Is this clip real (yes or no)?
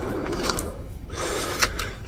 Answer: no